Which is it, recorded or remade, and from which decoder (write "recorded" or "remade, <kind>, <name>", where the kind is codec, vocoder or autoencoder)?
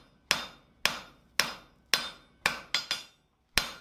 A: recorded